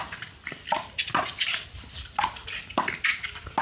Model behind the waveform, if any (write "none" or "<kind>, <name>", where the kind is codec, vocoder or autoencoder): none